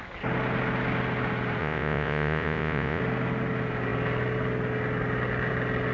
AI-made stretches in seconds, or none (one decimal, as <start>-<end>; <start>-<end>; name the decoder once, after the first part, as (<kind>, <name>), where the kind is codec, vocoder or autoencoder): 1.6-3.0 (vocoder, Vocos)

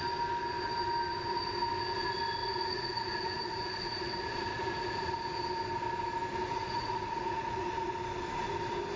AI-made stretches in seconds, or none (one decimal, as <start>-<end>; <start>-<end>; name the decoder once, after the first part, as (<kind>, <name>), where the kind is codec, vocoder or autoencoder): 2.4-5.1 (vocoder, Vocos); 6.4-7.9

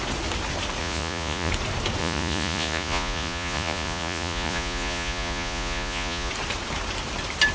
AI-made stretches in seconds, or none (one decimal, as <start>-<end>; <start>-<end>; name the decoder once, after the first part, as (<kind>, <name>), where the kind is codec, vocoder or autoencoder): 0.8-1.5 (vocoder, Vocos); 2.0-6.3

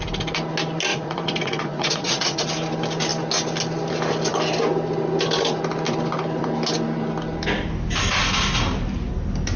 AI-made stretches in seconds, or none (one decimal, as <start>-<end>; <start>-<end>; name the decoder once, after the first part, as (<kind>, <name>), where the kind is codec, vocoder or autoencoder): 0.9-2.5 (vocoder, Vocos)

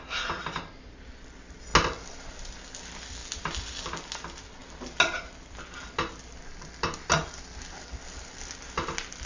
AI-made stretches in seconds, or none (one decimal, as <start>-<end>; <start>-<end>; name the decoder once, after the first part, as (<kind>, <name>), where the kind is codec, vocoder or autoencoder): none

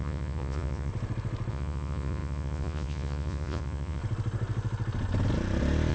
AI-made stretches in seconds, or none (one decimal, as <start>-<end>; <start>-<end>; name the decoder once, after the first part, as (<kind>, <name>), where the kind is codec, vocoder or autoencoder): 0.0-0.9 (vocoder, Vocos); 1.5-4.0

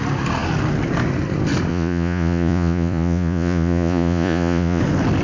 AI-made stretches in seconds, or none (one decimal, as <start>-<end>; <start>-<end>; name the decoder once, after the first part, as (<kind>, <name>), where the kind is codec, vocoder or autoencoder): 1.7-4.8 (vocoder, Vocos)

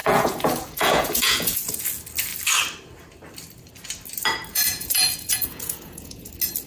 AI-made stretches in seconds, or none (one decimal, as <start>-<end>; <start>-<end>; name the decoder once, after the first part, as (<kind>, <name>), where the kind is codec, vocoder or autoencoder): 0.0-1.8 (vocoder, Vocos); 4.5-6.3